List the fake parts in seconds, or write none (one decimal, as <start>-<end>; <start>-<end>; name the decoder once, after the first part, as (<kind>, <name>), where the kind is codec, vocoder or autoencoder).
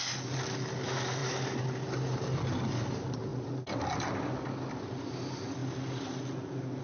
none